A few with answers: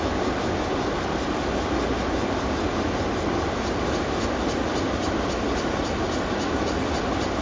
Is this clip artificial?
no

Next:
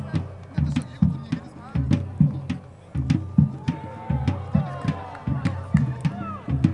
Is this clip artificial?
no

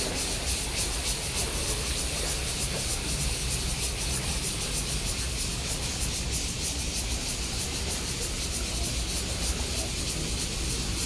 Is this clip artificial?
no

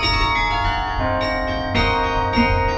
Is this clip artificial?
no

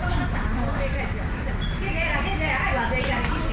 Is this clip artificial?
no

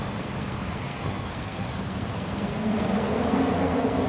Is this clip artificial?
yes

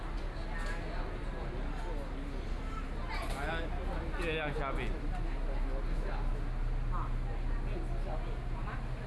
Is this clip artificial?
no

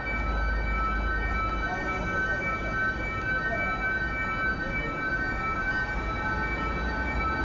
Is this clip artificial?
no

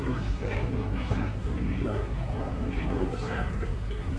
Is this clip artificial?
yes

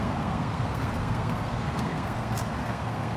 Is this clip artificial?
yes